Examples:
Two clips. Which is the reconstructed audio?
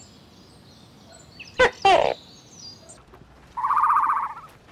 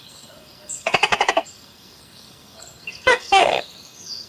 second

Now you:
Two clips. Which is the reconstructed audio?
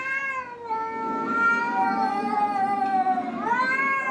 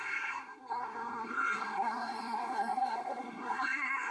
second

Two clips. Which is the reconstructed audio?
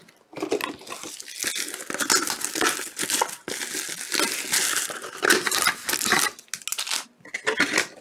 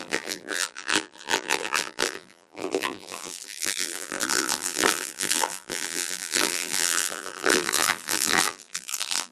second